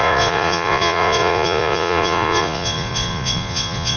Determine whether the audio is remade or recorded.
remade